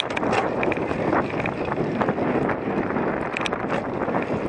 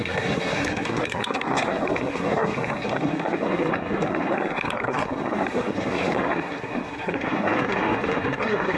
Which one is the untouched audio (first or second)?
first